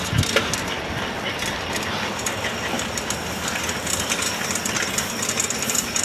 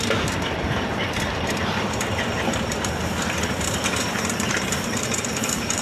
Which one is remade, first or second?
second